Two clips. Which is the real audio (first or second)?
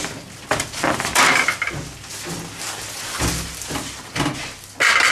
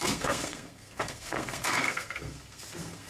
first